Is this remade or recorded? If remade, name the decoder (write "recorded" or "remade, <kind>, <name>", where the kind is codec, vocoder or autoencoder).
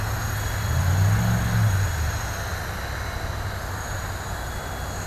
recorded